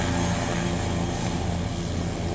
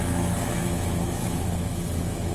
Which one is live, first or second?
first